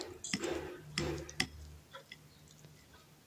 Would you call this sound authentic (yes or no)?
yes